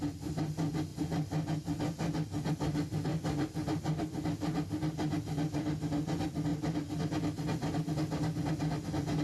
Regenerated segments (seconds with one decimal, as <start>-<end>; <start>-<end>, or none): none